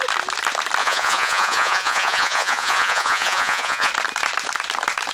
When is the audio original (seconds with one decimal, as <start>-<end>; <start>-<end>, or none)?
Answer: 0.0-0.8; 3.9-5.1